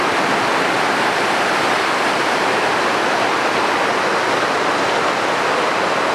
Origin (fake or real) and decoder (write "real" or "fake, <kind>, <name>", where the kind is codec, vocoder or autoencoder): real